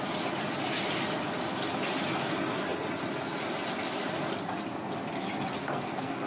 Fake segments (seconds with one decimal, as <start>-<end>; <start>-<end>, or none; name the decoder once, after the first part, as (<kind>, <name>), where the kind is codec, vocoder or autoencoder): 5.6-6.3 (codec, SNAC)